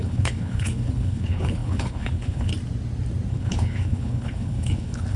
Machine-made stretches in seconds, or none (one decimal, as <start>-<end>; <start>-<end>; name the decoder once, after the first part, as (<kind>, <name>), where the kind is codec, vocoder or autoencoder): 0.0-2.5 (codec, HILCodec); 3.3-5.2